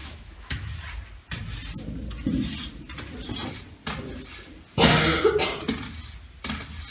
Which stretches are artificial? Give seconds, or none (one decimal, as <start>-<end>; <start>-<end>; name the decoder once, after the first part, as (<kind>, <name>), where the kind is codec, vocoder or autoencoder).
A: 0.0-0.7 (autoencoder, DAC-VAE)